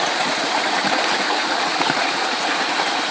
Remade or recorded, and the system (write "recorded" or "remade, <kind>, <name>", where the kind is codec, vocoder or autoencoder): remade, vocoder, Vocos